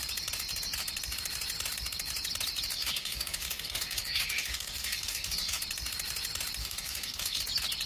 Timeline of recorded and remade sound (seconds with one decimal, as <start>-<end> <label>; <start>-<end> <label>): 0.0-2.7 recorded; 2.7-5.6 remade; 5.6-6.6 recorded; 6.6-7.4 remade; 7.4-7.9 recorded